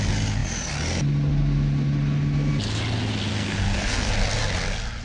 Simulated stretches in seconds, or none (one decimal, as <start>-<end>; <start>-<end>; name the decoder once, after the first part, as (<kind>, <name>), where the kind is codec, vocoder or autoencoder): 3.3-4.1 (codec, SNAC)

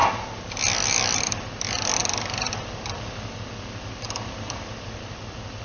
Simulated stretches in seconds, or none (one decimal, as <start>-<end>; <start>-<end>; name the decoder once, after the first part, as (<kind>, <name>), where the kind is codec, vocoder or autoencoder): none

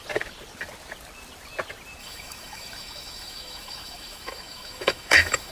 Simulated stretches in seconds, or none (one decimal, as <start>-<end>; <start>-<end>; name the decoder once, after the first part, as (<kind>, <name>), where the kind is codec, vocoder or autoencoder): 2.0-5.5 (autoencoder, DAC-VAE)

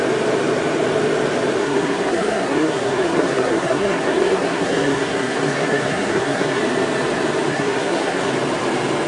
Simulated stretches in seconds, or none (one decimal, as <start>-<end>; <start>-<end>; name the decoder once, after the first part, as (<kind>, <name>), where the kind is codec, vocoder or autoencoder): 1.6-6.6 (codec, SNAC); 7.5-8.3

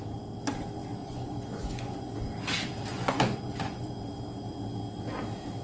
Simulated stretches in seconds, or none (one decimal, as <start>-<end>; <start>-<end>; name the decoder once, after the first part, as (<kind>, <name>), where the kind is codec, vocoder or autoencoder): 1.0-2.1 (vocoder, Vocos); 2.9-3.9